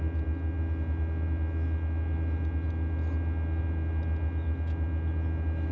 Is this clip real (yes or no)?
yes